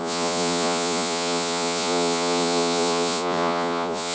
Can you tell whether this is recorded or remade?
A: remade